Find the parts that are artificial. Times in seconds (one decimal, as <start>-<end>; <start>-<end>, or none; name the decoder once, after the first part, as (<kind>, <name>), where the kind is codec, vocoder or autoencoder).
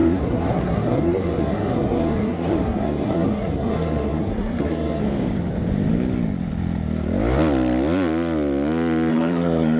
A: 0.0-5.0 (codec, SNAC); 9.1-9.8